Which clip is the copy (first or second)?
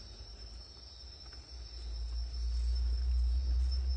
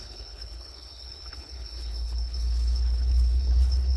second